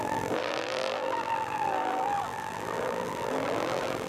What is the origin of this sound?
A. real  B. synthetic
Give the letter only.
B